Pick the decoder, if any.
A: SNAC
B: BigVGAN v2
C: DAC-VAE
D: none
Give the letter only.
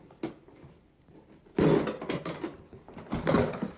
B